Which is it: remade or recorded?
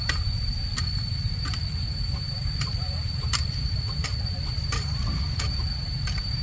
remade